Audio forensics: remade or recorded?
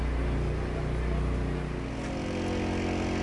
recorded